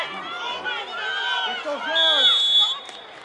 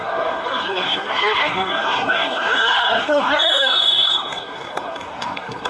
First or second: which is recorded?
first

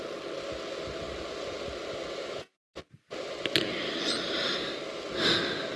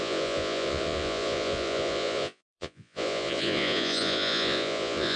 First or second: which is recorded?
first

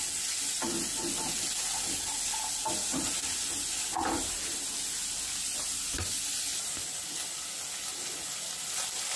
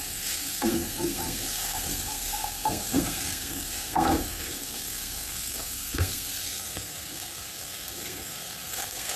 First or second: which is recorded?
first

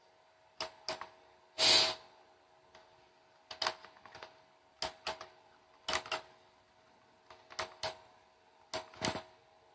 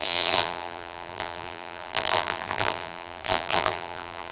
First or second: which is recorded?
first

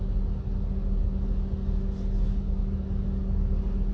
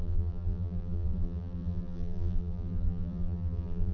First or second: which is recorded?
first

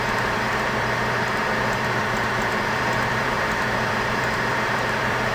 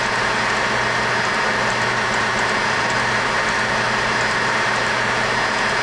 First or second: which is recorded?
second